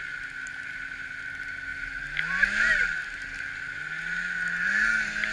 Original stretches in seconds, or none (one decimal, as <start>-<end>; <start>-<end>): 0.0-5.3